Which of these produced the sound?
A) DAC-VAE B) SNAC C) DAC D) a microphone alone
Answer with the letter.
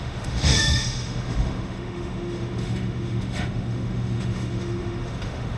A